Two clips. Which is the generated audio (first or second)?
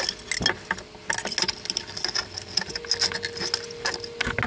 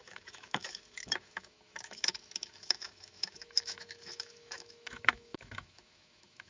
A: second